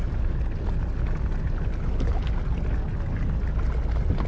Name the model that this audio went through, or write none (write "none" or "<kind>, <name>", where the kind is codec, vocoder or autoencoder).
none